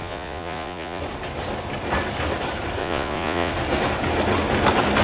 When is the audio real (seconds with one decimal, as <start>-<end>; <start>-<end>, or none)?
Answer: 1.0-2.8; 3.5-5.0

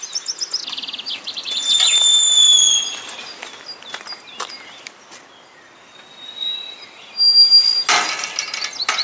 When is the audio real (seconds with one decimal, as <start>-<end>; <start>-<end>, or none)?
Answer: 0.0-9.0

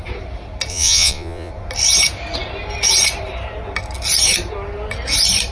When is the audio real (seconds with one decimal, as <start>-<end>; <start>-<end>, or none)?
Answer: 0.0-0.7; 1.5-5.5